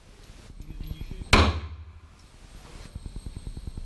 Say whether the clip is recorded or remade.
recorded